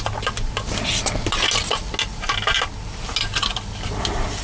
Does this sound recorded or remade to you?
recorded